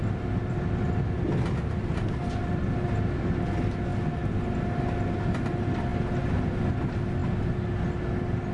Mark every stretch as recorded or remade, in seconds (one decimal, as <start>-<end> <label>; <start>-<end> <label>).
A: 0.0-8.5 recorded